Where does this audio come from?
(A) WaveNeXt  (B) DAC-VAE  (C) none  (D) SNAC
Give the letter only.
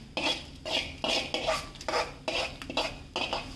C